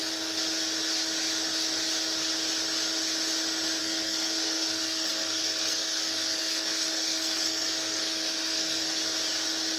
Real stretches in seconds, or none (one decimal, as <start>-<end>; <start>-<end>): 0.0-3.8; 9.0-9.8